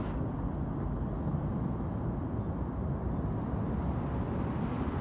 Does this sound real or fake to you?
real